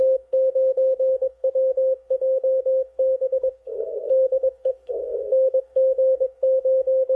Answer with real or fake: fake